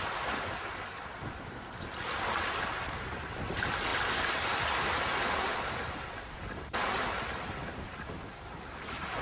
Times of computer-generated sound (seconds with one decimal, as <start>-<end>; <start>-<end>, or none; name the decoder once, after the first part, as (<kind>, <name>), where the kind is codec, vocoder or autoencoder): none